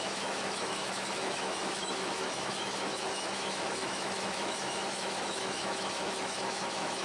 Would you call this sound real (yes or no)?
no